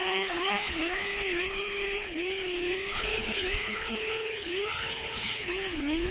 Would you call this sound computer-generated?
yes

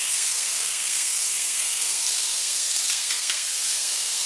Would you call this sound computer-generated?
yes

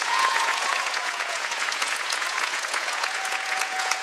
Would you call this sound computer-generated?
yes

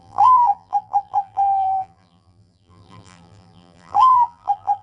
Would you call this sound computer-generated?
yes